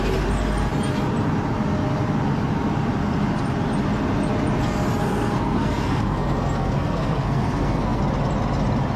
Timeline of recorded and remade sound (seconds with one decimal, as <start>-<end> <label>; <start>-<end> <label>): 0.0-5.0 recorded; 5.0-8.0 remade; 8.0-9.0 recorded